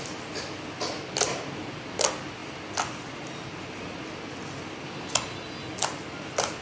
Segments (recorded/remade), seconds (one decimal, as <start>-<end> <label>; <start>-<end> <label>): 0.0-6.6 recorded